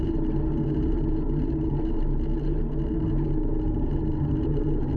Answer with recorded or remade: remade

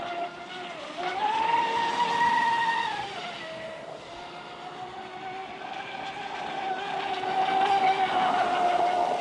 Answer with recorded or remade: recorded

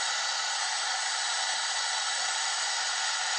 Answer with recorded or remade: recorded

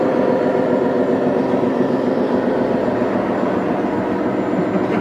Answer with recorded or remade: recorded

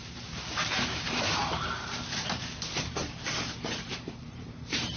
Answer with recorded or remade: remade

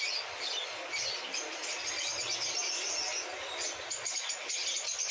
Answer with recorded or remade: recorded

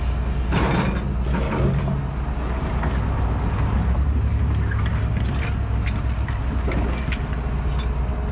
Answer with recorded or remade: recorded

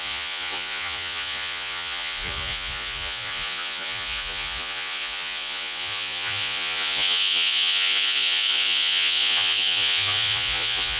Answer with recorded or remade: remade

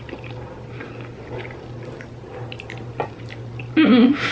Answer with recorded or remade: recorded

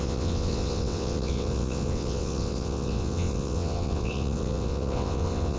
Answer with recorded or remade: remade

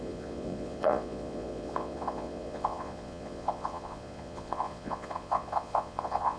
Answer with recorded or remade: remade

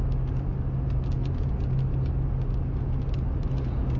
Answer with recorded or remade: recorded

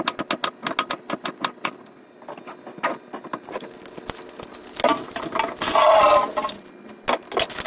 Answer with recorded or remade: recorded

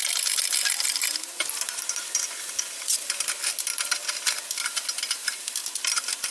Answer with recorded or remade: recorded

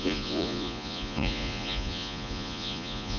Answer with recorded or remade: remade